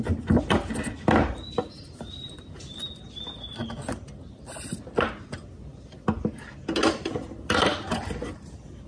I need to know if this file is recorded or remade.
recorded